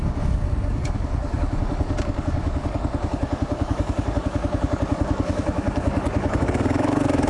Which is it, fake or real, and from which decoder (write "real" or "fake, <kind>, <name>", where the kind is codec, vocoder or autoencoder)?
fake, codec, DAC